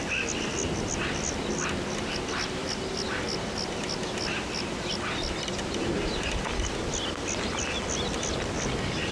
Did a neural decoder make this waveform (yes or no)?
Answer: no